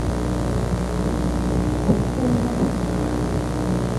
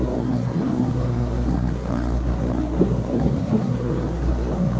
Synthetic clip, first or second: second